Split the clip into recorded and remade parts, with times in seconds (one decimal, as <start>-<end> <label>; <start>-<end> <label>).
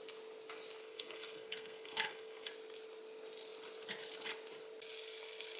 0.0-0.8 recorded; 0.8-2.5 remade; 2.5-5.6 recorded